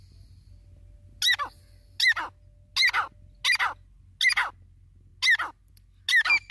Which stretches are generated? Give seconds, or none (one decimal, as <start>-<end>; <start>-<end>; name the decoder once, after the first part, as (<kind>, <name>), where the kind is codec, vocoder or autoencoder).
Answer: none